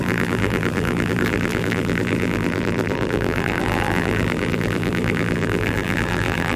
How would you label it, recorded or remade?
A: remade